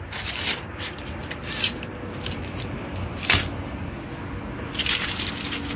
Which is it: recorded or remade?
recorded